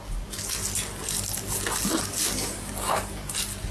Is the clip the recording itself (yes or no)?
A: yes